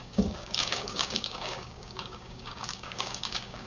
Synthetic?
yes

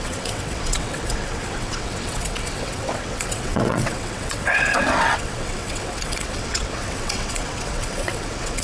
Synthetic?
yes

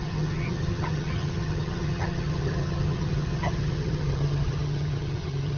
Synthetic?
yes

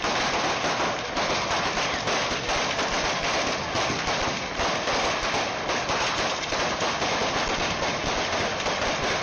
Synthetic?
no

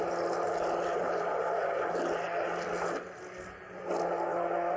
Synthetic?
no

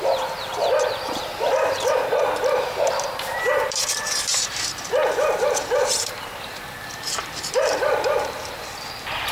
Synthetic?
yes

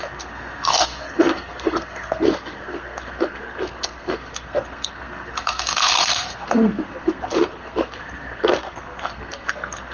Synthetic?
yes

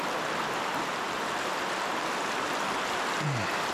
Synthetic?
no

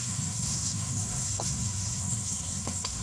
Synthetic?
yes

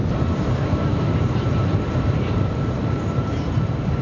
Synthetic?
yes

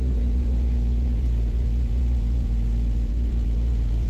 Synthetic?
yes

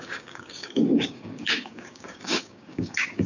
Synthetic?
yes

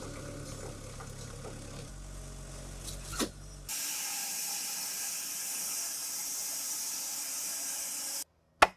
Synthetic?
no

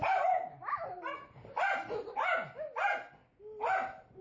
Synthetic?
no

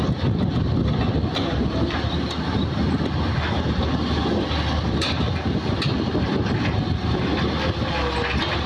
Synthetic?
no